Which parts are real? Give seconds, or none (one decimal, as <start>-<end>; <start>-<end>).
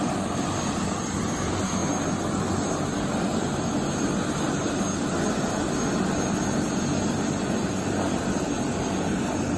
0.0-9.6